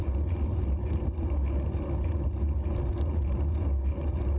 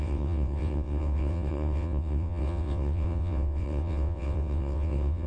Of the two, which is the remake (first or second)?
second